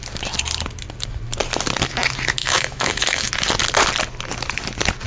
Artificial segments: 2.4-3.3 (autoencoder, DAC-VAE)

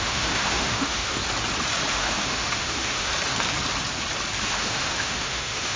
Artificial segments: 0.0-1.2 (autoencoder, DAC-VAE); 1.9-3.1; 4.4-5.8

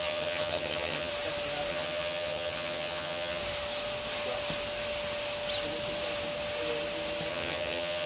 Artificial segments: 0.0-1.1 (vocoder, HiFi-GAN); 1.7-3.4; 7.3-8.1

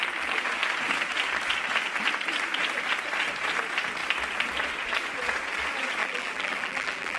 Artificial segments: 6.0-7.2 (vocoder, BigVGAN v2)

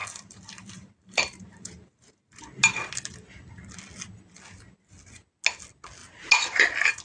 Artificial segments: 0.0-2.4 (vocoder, BigVGAN v2)

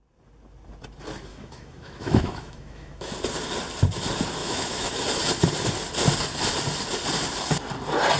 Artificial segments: 1.3-3.1 (autoencoder, DAC-VAE); 4.4-5.0

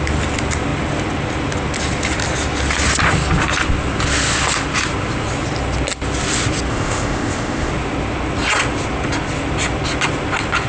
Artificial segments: 6.7-7.7 (codec, ZipCodec)